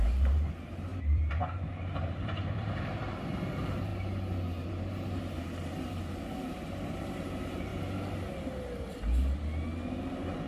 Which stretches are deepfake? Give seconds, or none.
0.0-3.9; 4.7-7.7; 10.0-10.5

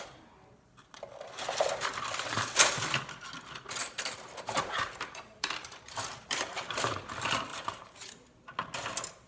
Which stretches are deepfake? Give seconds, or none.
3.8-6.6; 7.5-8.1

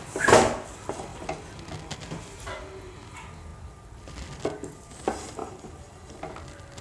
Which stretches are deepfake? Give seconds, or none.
none

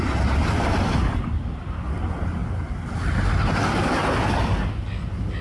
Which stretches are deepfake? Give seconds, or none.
4.0-4.8

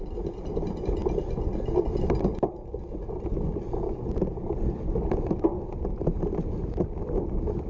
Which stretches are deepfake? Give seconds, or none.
none

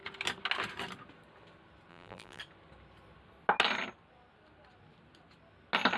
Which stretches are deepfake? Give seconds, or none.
1.9-2.4